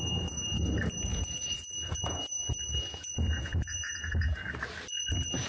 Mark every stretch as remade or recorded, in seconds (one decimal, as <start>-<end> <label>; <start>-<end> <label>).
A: 0.0-1.1 recorded; 1.1-4.4 remade; 4.4-5.5 recorded